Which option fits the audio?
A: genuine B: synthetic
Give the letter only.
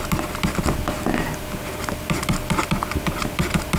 A